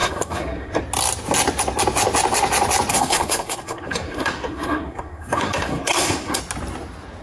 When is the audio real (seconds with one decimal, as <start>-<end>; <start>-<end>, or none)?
0.8-2.9; 6.4-7.2